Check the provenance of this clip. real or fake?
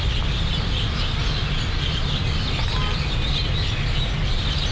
real